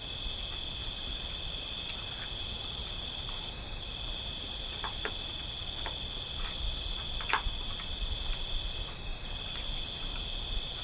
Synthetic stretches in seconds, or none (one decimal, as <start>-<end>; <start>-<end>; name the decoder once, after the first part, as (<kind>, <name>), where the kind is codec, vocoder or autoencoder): 0.8-1.9 (vocoder, BigVGAN v2); 2.8-5.1; 9.1-10.8